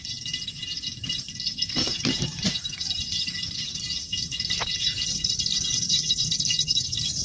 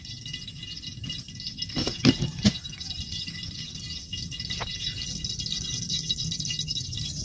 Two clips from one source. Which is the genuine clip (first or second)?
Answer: second